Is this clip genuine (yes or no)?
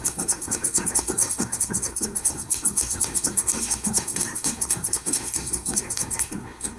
no